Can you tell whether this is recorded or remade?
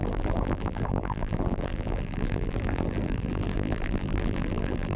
remade